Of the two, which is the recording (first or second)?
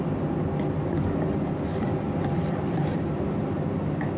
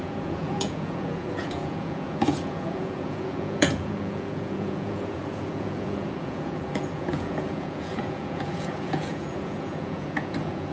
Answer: first